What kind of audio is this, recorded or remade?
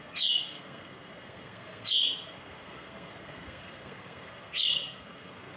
remade